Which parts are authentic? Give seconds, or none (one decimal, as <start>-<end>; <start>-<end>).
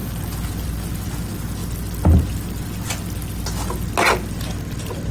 0.9-5.1